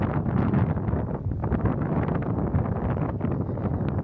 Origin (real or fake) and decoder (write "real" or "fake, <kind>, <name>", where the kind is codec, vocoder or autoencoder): real